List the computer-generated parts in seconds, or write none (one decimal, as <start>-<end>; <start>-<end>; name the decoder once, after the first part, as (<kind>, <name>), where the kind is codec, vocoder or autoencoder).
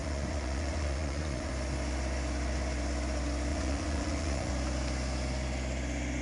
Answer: 0.0-1.5 (vocoder, Vocos); 3.5-4.5